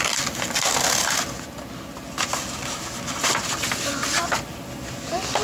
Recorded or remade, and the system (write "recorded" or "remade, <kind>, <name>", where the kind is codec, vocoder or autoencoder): recorded